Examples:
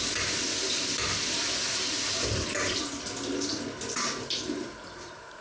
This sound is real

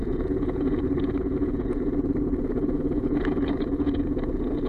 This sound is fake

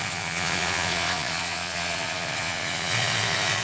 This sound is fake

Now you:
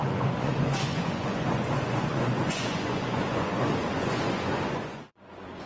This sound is fake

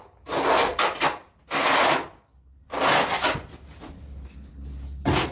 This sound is real